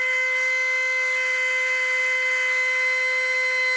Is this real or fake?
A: fake